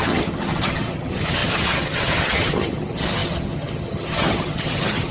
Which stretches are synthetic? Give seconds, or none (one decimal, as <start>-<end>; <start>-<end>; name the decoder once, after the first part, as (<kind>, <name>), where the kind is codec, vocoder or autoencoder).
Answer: 0.0-5.1 (vocoder, HiFi-GAN)